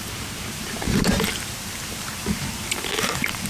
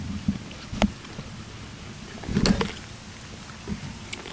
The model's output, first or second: first